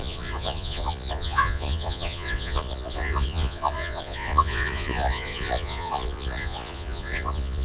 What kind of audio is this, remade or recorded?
remade